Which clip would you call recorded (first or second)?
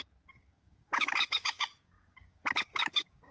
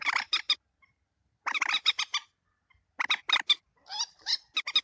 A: second